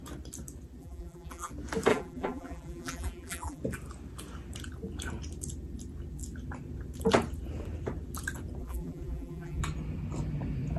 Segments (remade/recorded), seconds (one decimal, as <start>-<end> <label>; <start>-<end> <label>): 0.0-0.8 recorded; 0.8-1.5 remade; 1.5-1.9 recorded; 1.9-3.6 remade; 3.6-8.6 recorded; 8.6-9.6 remade; 9.6-10.8 recorded